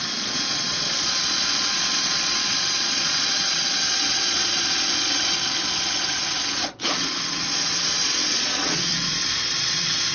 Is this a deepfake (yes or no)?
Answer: yes